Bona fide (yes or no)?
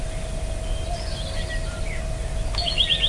yes